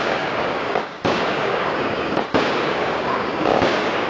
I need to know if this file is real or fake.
fake